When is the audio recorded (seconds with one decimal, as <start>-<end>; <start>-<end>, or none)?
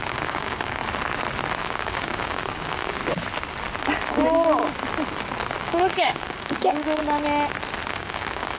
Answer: 0.8-1.6; 3.0-4.1; 4.6-5.6; 7.0-7.9